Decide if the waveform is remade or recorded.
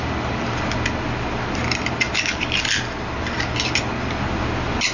recorded